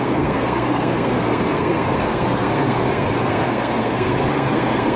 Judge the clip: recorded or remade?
remade